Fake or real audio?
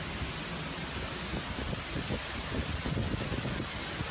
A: real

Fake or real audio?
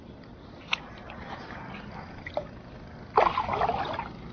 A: real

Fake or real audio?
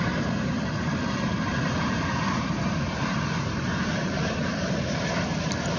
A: fake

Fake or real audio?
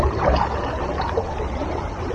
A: fake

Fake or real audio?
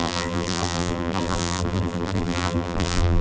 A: fake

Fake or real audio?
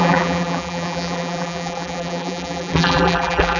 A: fake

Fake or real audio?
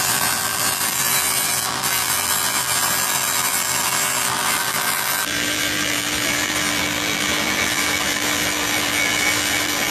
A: fake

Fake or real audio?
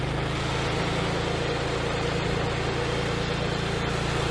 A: real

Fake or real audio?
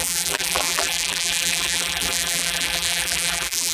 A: fake